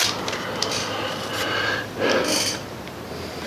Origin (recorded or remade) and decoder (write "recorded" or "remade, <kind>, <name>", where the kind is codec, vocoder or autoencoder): recorded